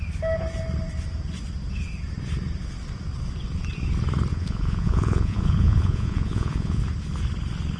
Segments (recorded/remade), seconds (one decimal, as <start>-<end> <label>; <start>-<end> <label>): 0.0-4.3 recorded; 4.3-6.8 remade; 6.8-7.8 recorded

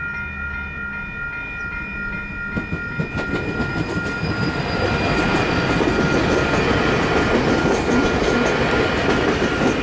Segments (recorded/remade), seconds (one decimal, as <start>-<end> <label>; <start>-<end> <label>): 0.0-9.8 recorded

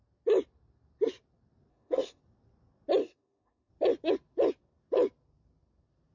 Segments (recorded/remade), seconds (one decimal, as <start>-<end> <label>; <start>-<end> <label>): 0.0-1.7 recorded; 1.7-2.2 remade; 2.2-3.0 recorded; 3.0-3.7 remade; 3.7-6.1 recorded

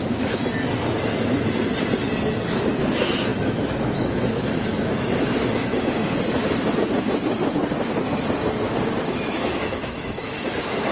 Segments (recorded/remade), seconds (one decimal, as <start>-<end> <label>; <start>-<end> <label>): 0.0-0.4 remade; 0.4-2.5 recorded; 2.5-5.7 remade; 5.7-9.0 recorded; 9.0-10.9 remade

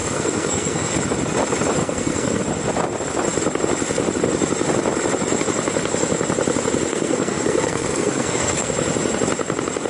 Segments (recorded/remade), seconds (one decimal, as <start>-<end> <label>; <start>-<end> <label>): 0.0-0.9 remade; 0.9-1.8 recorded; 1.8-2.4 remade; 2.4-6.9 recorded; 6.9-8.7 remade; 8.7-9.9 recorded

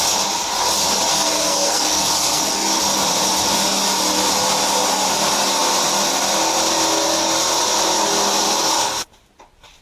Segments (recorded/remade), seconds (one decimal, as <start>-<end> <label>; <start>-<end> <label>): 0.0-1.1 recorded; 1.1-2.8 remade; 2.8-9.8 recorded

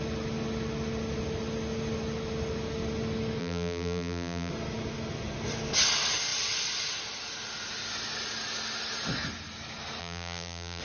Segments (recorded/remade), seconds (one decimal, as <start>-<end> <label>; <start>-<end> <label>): 0.0-3.4 recorded; 3.4-4.5 remade; 4.5-10.0 recorded; 10.0-10.8 remade

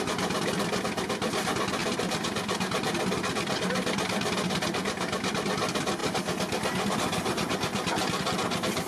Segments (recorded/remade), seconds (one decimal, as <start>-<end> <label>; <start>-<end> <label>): 0.0-1.8 remade; 1.8-5.3 recorded; 5.3-6.0 remade; 6.0-7.0 recorded; 7.0-8.9 remade